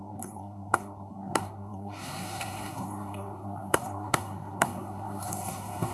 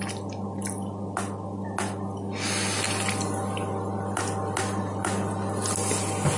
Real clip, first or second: second